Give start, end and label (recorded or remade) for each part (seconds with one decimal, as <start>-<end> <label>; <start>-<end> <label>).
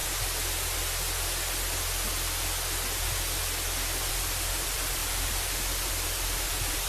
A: 0.0-4.1 recorded; 4.1-6.9 remade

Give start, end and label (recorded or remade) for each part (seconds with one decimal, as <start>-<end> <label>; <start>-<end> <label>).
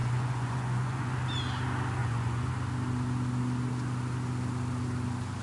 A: 0.0-1.1 remade; 1.1-2.0 recorded; 2.0-2.5 remade; 2.5-5.4 recorded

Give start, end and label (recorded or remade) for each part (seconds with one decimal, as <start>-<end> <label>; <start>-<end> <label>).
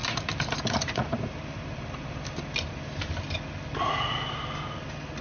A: 0.0-3.1 remade; 3.1-5.2 recorded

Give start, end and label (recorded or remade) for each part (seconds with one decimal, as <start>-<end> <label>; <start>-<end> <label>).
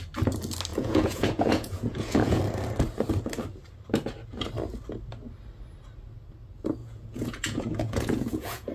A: 0.0-0.7 recorded; 0.7-2.4 remade; 2.4-6.8 recorded; 6.8-8.7 remade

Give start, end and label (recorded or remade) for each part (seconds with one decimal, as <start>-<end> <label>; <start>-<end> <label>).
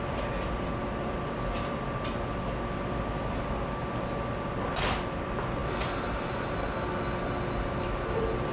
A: 0.0-8.5 recorded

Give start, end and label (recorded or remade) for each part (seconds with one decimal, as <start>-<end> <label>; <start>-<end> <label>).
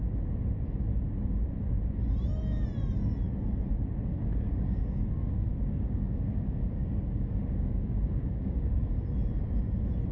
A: 0.0-4.1 recorded; 4.1-8.9 remade; 8.9-10.1 recorded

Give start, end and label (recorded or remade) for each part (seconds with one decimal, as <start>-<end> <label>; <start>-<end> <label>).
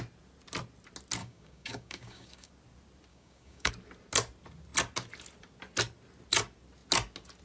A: 0.0-1.2 recorded; 1.2-2.5 remade; 2.5-3.1 recorded; 3.1-3.7 remade; 3.7-7.4 recorded